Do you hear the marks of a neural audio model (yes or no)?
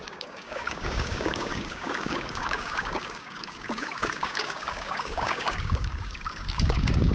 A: yes